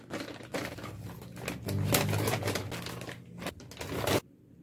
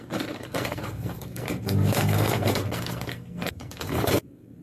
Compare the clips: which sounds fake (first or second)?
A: second